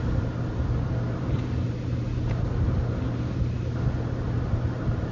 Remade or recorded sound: recorded